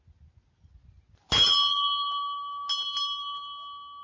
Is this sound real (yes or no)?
yes